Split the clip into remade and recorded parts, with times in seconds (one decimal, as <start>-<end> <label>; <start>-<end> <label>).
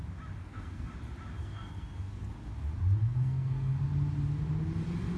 0.0-0.4 recorded; 0.4-0.9 remade; 0.9-1.4 recorded; 1.4-2.3 remade; 2.3-3.0 recorded; 3.0-3.8 remade; 3.8-5.2 recorded